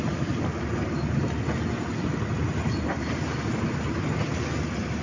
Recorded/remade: recorded